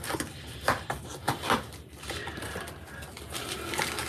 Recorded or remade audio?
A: recorded